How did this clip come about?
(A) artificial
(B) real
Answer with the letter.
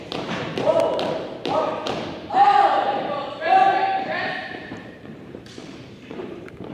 A